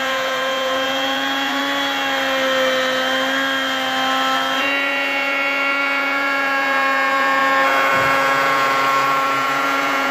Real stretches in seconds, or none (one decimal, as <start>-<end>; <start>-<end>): 1.6-4.6

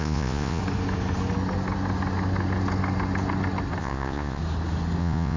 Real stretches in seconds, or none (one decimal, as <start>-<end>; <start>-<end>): 0.6-3.8; 4.4-5.0

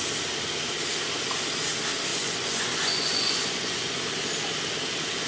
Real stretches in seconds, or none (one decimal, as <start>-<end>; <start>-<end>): 0.0-2.1; 4.0-5.3

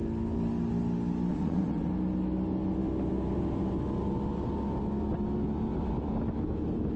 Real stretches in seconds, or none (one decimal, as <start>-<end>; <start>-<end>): 0.0-1.3; 1.9-7.0